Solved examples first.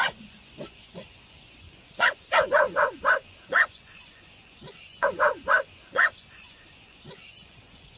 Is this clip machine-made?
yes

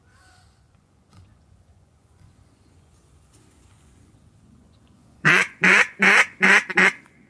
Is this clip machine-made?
yes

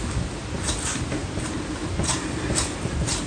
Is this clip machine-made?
no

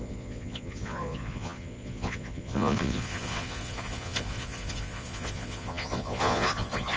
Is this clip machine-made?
yes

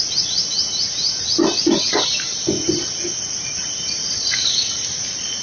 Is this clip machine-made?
no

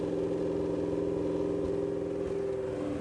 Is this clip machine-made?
no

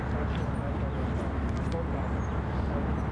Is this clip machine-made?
no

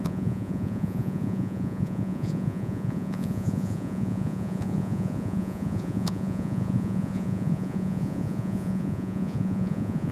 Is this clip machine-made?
yes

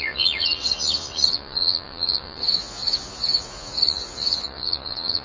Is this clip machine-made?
yes